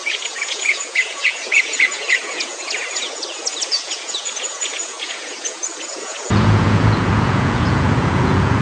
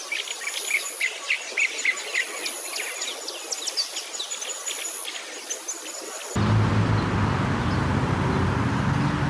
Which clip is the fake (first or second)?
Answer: first